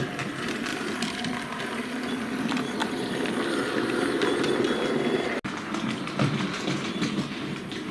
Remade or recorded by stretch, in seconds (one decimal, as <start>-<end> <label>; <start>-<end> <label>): 0.0-0.7 recorded; 0.7-1.6 remade; 1.6-2.8 recorded; 2.8-4.9 remade; 4.9-7.9 recorded